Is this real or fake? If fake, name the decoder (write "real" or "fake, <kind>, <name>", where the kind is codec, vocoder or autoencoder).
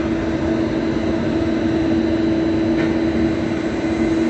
real